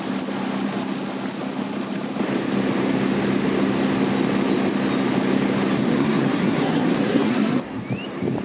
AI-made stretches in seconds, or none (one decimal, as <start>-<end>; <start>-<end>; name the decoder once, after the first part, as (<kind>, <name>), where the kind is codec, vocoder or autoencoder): 5.8-7.8 (codec, SNAC)

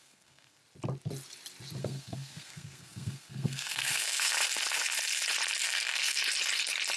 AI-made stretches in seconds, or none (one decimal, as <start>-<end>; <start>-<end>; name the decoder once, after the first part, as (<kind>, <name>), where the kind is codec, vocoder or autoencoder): 0.0-0.6 (codec, SNAC); 1.8-4.4; 5.6-6.2